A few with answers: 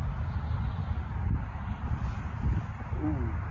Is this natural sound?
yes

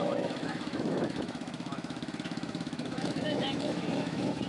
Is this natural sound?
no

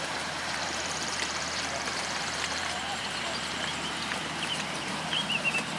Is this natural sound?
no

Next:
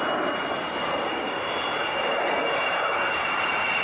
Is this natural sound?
yes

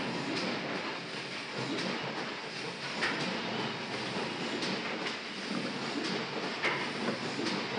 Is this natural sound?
yes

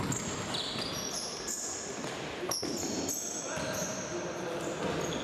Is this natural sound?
yes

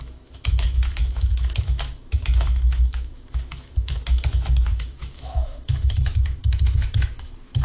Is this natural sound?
no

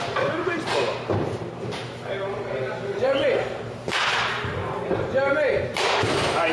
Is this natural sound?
no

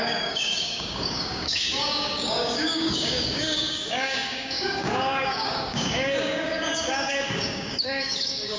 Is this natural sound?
no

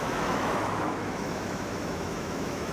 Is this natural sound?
no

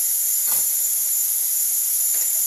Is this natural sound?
yes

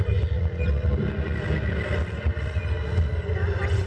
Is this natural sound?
yes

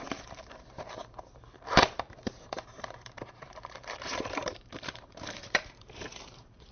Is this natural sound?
no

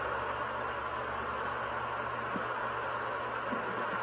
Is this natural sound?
yes